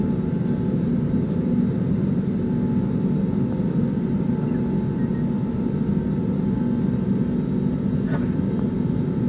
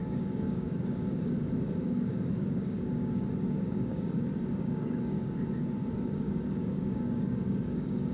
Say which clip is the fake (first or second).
second